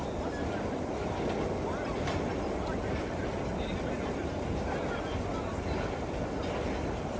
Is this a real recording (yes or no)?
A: yes